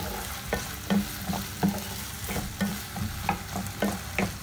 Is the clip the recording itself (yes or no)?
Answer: yes